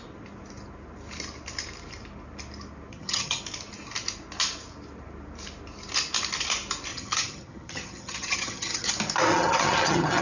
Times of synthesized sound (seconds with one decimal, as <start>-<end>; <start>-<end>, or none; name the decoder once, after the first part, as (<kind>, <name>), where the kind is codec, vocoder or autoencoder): 2.9-3.4 (vocoder, HiFi-GAN); 6.9-8.9; 9.3-10.2